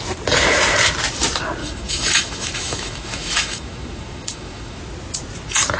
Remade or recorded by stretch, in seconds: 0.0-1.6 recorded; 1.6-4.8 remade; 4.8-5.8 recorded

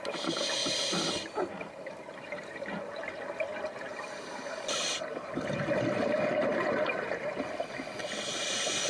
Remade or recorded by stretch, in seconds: 0.0-8.9 recorded